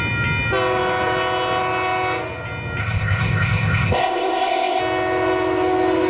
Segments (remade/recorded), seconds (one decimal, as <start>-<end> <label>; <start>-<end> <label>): 0.0-2.8 recorded; 2.8-4.8 remade; 4.8-6.1 recorded